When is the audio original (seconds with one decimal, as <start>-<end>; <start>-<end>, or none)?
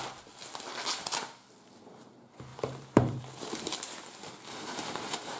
0.0-2.5; 3.2-5.4